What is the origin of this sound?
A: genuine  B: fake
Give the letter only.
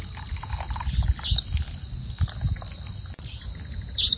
A